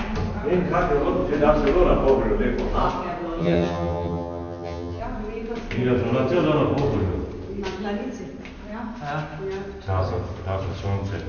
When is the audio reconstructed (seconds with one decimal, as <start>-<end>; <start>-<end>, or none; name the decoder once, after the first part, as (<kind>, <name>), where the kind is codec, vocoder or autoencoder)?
3.4-5.0 (vocoder, HiFi-GAN)